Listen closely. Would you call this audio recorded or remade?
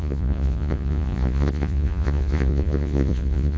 remade